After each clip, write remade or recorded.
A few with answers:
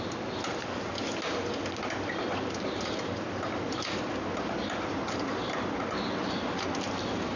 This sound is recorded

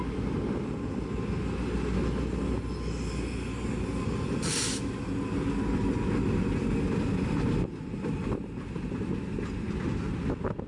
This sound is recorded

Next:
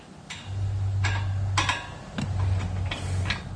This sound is recorded